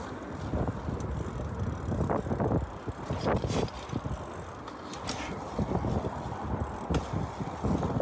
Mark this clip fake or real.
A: real